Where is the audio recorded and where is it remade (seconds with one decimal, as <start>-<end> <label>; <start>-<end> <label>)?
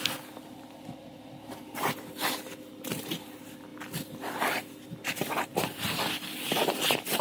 0.0-3.7 recorded; 3.7-4.7 remade; 4.7-5.5 recorded; 5.5-6.6 remade; 6.6-7.2 recorded